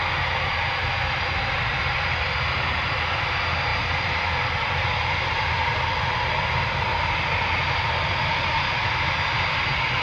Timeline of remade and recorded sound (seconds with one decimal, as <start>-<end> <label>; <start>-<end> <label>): 0.0-3.7 recorded; 3.7-6.0 remade; 6.0-10.0 recorded